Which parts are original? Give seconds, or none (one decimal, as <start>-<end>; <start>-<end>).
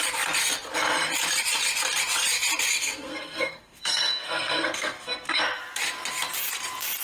0.0-2.7; 5.4-7.0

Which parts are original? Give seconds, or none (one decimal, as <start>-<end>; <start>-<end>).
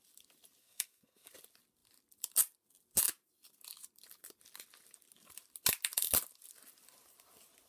0.0-0.6; 1.3-7.7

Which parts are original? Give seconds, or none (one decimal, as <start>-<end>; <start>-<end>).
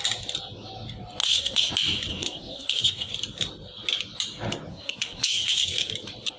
0.0-1.2; 1.7-2.1; 3.1-4.7; 5.9-6.4